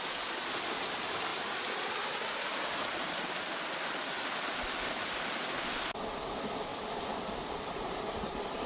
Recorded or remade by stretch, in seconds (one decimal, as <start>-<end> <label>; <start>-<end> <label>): 0.0-6.7 recorded; 6.7-7.7 remade; 7.7-8.7 recorded